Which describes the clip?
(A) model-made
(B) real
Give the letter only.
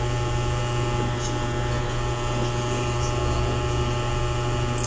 B